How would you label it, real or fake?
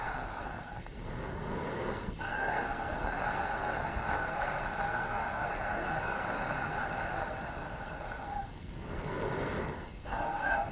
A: fake